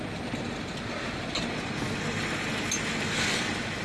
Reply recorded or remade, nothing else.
recorded